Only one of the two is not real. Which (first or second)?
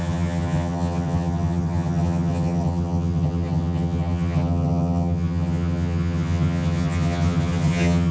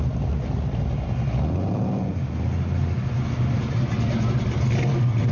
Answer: first